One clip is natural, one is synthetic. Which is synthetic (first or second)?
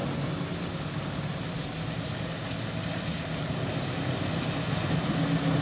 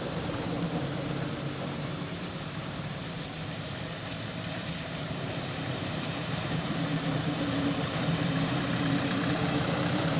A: second